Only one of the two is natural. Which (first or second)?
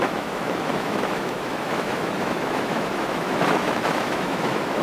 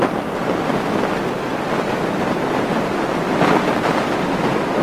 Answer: second